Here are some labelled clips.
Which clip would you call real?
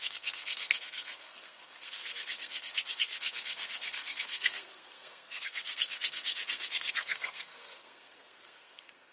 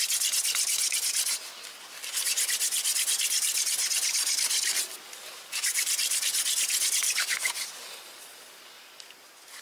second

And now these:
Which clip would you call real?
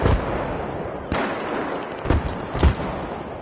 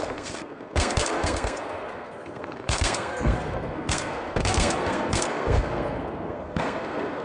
first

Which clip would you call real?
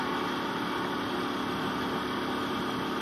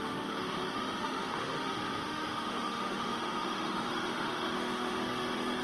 first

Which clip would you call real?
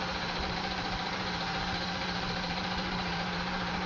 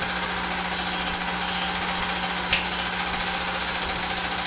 second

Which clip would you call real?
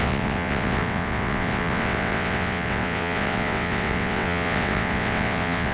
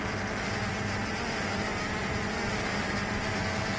second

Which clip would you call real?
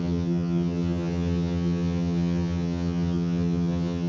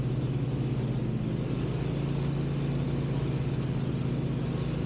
second